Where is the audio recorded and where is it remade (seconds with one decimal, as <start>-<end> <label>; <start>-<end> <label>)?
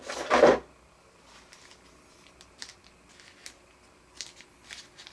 0.0-5.1 recorded